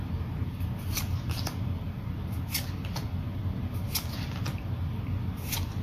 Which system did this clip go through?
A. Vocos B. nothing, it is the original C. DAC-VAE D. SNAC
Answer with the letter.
B